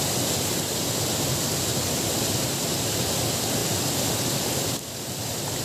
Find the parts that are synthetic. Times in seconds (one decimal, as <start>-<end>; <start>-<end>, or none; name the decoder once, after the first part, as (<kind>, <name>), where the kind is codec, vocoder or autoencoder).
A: none